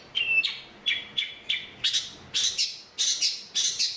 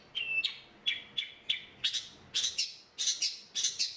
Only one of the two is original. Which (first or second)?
second